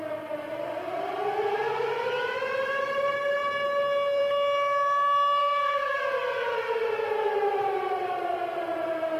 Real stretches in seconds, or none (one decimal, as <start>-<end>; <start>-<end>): 0.0-5.4; 6.0-9.2